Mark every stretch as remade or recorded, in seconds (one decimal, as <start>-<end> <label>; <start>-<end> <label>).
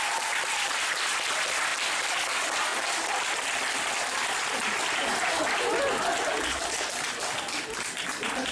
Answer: 0.0-8.5 recorded